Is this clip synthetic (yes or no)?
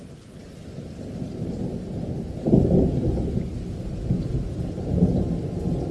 no